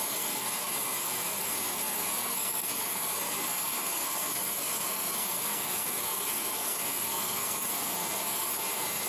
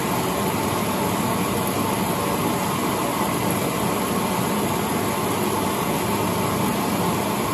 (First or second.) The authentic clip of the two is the second